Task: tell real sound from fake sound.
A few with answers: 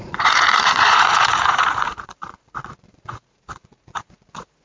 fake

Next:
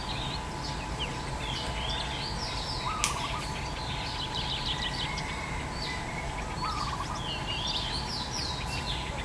real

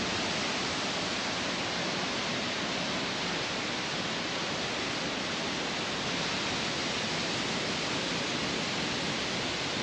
real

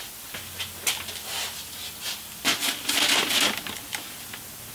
real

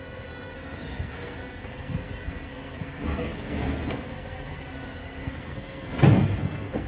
fake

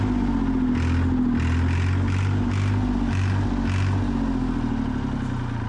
real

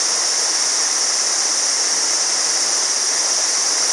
real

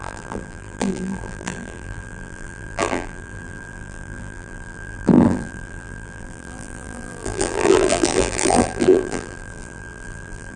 fake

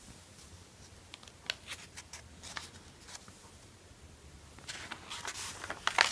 real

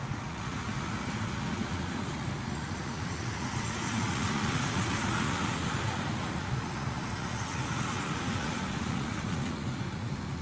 fake